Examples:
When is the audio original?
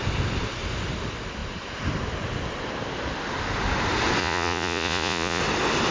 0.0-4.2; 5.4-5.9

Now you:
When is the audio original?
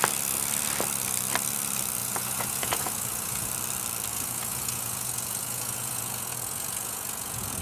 0.0-2.0; 3.5-4.1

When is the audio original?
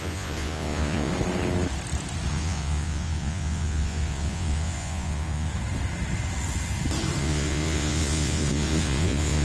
1.1-2.3; 5.5-7.2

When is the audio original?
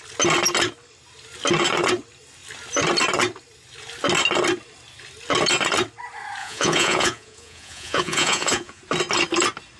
0.0-6.4; 8.8-9.8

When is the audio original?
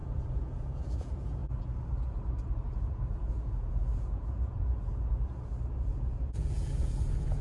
1.4-2.9; 4.7-5.8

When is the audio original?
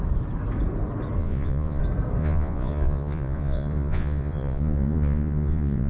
0.0-1.2; 1.8-2.2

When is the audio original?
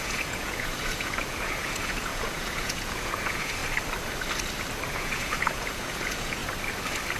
3.6-4.9; 6.4-7.2